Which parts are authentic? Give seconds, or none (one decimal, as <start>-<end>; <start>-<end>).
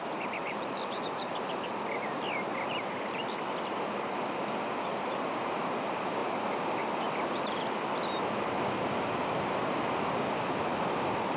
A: 1.3-2.4; 3.2-4.9; 6.2-10.7